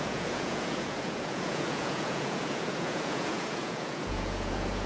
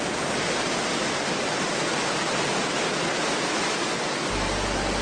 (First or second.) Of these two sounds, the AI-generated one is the first